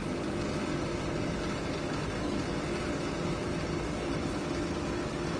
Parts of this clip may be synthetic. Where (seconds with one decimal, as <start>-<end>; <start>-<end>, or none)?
none